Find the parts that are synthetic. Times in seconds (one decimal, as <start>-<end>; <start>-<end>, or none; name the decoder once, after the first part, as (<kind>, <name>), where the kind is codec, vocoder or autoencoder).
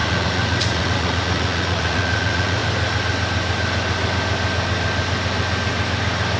0.0-2.6 (vocoder, Vocos)